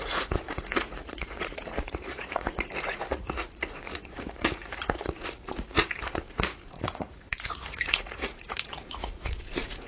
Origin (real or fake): fake